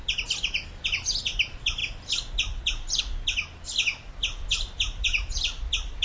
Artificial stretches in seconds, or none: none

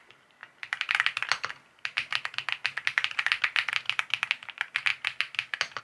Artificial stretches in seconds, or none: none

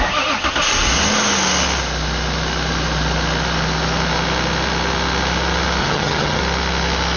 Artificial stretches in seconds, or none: 5.8-6.4 (vocoder, HiFi-GAN)

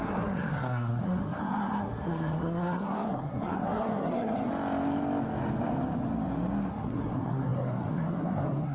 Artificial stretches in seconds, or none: 0.0-4.5 (codec, SNAC); 6.7-8.7

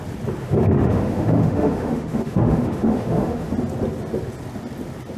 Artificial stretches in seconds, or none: 0.4-3.5 (autoencoder, DAC-VAE)

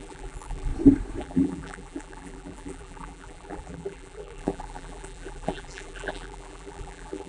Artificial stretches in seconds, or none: 0.0-0.7 (vocoder, BigVGAN v2); 1.2-7.3

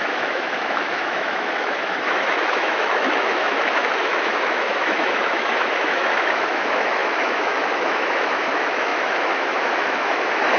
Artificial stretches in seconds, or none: 0.0-10.6 (autoencoder, DAC-VAE)